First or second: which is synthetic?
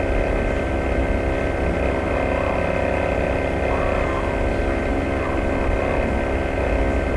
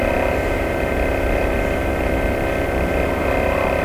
second